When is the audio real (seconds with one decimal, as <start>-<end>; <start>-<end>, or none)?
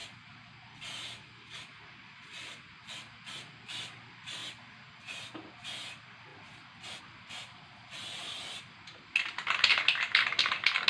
0.0-10.9